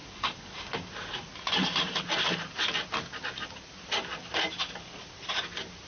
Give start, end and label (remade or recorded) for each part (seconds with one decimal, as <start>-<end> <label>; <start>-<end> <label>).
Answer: 0.0-5.9 recorded